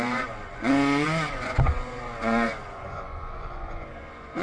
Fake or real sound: fake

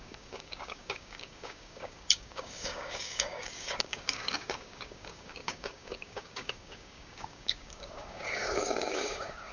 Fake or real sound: fake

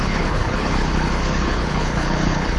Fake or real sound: fake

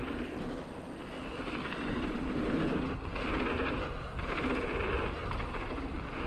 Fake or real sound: real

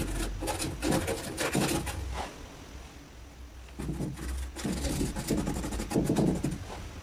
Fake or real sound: real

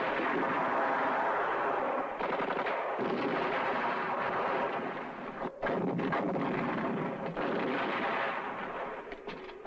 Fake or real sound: real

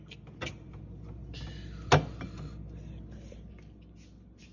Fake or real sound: real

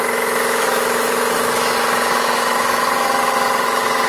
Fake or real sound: fake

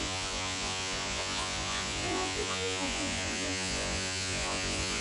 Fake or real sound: fake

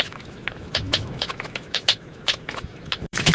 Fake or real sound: fake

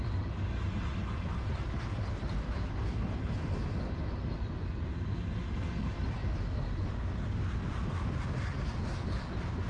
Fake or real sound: real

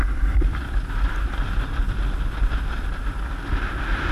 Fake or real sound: real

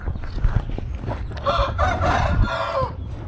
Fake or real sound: real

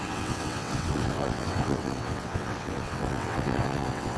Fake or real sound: fake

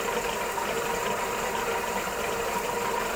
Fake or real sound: real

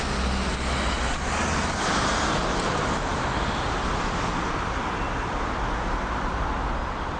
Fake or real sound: real